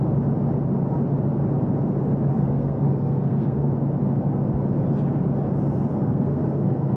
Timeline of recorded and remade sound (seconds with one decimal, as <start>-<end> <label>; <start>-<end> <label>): 0.0-2.3 recorded; 2.3-3.7 remade; 3.7-5.9 recorded; 5.9-7.0 remade